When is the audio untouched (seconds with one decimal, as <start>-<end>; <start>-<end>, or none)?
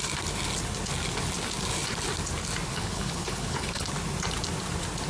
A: 0.0-2.7; 3.9-5.1